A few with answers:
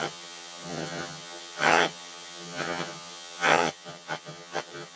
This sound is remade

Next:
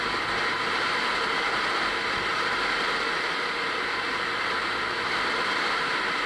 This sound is recorded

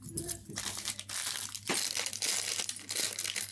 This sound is recorded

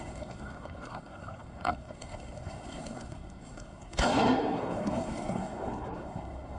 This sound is remade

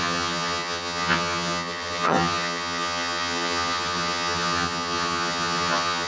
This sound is remade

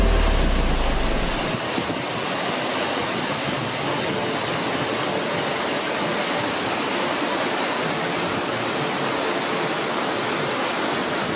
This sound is recorded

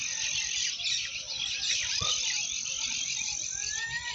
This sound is remade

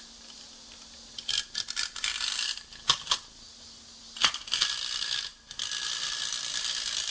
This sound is recorded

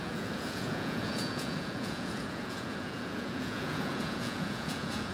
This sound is remade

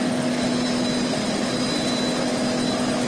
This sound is recorded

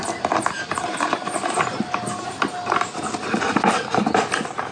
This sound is recorded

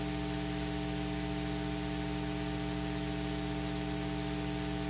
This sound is recorded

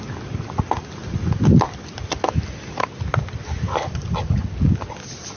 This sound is recorded